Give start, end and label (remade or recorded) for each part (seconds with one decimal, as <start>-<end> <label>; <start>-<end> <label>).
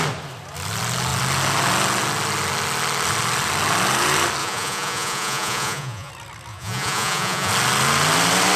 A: 0.0-4.4 recorded; 4.4-6.1 remade; 6.1-6.5 recorded; 6.5-7.5 remade; 7.5-8.6 recorded